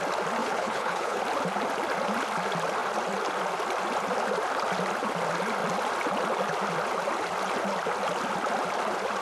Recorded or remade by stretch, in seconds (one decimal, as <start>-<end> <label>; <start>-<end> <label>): 0.0-0.4 recorded; 0.4-1.2 remade; 1.2-9.2 recorded

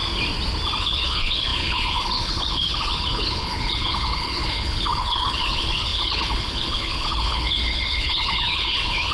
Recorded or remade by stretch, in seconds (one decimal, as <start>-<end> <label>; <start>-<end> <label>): 0.0-0.8 recorded; 0.8-9.1 remade

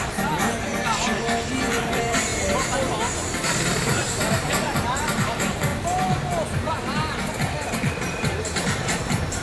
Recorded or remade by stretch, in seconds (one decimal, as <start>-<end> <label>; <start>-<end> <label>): 0.0-0.7 remade; 0.7-1.8 recorded; 1.8-5.7 remade; 5.7-8.0 recorded; 8.0-9.4 remade

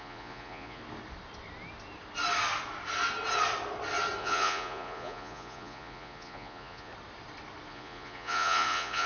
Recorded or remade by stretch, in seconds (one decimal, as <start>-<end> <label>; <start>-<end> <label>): 0.0-0.8 remade; 0.8-4.2 recorded; 4.2-6.9 remade; 6.9-7.7 recorded; 7.7-9.1 remade